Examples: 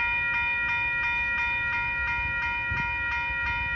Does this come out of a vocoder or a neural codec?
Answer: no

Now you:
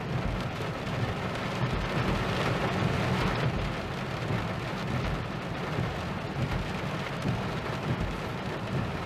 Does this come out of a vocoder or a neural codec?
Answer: no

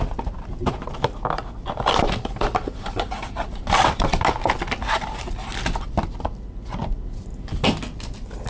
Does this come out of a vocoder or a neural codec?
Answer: no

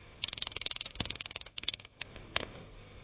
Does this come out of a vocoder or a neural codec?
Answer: yes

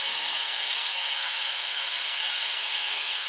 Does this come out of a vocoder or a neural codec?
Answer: yes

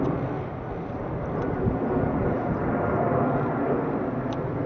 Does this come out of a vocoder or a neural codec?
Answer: no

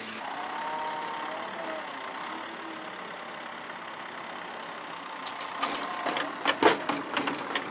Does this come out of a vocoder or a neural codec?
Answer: no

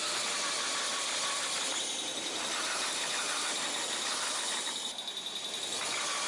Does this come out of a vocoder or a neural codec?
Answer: no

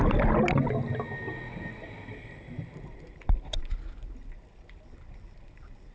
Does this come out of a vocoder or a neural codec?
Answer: no